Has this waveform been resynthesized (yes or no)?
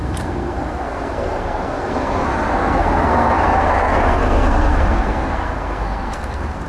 yes